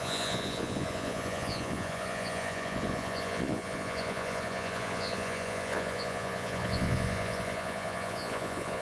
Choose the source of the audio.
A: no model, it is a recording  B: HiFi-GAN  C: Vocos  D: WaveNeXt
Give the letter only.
C